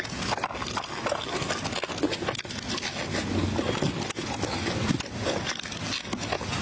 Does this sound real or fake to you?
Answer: real